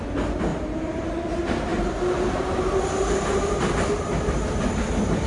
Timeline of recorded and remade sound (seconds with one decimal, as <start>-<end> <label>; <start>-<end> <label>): 0.0-0.5 recorded; 0.5-1.0 remade; 1.0-1.7 recorded; 1.7-2.6 remade; 2.6-5.3 recorded